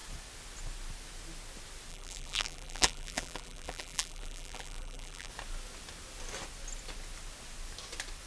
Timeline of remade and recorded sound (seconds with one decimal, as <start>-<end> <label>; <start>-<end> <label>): 0.0-1.9 recorded; 1.9-5.3 remade; 5.3-8.3 recorded